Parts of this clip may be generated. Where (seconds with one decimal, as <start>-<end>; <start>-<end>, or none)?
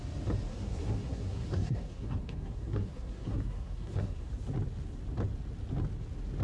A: 0.5-4.3